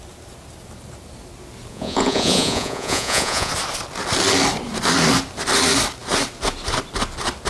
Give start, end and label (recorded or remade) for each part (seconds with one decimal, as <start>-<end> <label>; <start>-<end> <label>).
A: 0.0-1.7 recorded; 1.7-3.5 remade; 3.5-7.5 recorded